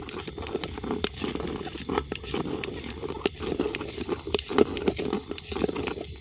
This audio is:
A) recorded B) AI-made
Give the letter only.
A